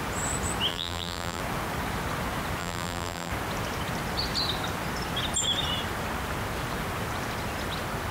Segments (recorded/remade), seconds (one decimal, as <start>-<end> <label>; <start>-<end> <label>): 0.0-0.7 recorded; 0.7-1.4 remade; 1.4-2.6 recorded; 2.6-3.3 remade; 3.3-8.1 recorded